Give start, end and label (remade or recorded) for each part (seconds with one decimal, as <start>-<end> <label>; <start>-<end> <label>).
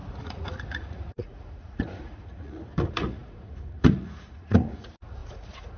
0.0-5.8 remade